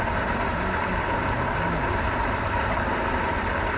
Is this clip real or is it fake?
real